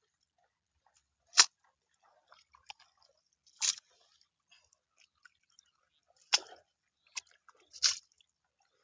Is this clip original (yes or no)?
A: yes